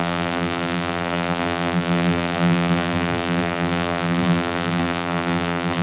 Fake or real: fake